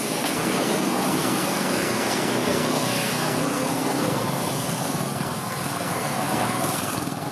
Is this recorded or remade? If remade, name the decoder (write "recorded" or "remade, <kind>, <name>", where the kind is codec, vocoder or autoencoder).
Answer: remade, codec, SNAC